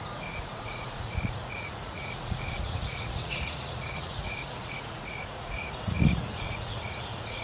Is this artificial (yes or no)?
yes